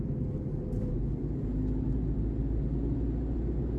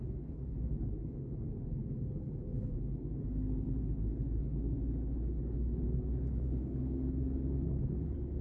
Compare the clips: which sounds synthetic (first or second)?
second